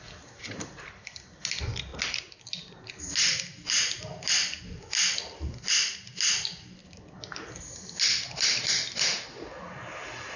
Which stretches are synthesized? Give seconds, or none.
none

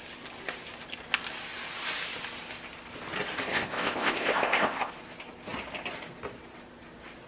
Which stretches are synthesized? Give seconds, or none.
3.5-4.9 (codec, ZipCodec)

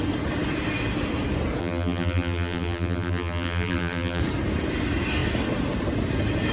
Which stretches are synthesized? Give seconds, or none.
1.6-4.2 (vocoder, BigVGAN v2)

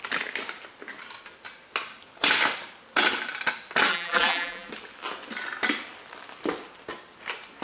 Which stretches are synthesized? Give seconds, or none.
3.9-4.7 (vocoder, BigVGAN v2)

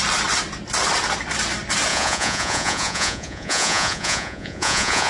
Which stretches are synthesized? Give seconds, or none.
1.9-5.1 (vocoder, Vocos)

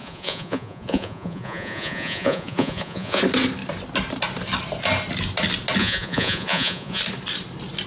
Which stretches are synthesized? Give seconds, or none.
0.0-3.2 (vocoder, Vocos); 5.8-7.0

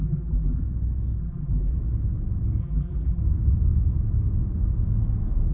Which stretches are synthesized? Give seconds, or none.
0.0-0.6 (vocoder, BigVGAN v2); 1.2-1.7; 2.6-3.2

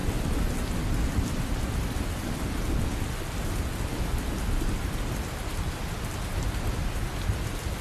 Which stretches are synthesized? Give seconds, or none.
none